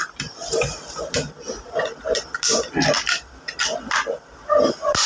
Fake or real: real